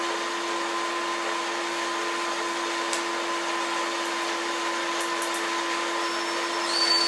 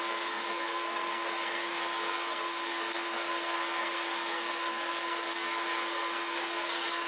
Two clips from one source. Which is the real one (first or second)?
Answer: first